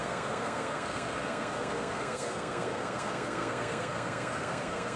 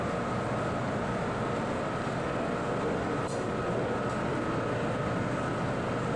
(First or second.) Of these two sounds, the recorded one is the second